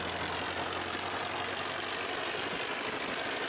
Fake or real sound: real